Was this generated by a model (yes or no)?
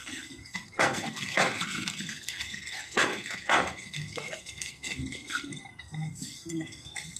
yes